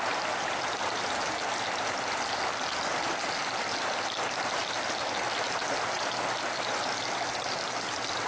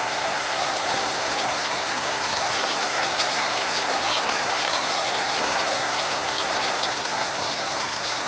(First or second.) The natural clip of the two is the first